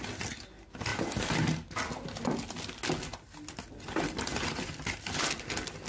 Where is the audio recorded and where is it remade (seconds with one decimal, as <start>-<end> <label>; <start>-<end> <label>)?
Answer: 0.0-5.9 recorded